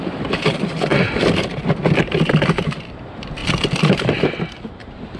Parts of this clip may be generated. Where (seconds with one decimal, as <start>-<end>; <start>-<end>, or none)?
0.0-0.9; 2.0-3.4; 4.1-5.2